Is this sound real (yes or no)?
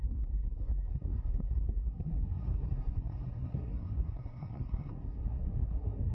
no